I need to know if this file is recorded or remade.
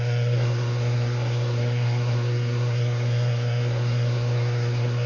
remade